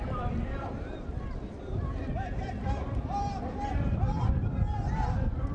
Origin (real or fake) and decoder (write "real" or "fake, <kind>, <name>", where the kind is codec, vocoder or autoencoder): fake, vocoder, BigVGAN v2